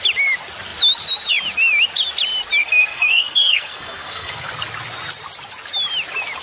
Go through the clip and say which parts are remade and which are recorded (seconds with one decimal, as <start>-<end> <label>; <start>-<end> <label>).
0.0-2.6 recorded; 2.6-4.5 remade; 4.5-6.4 recorded